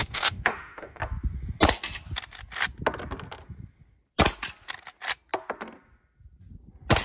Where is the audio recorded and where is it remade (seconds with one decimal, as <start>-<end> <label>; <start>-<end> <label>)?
0.0-1.0 remade; 1.0-7.0 recorded